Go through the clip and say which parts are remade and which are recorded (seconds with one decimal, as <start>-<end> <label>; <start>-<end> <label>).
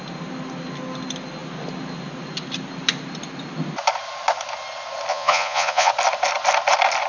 0.0-5.1 recorded; 5.1-5.9 remade; 5.9-7.1 recorded